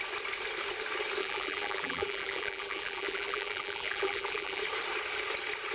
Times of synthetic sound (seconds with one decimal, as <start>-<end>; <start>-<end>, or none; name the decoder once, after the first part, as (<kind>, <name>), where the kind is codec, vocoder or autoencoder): 1.2-4.6 (vocoder, BigVGAN v2)